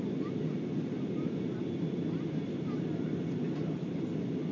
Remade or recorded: recorded